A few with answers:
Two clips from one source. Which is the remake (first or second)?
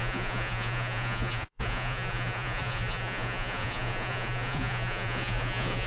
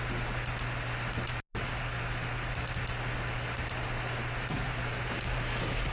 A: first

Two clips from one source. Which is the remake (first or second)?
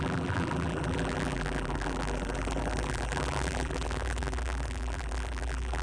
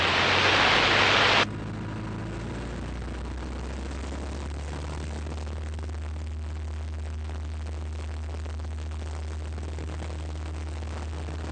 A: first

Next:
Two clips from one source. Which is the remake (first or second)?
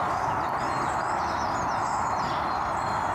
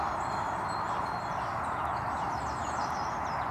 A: second